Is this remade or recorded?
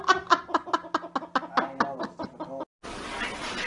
recorded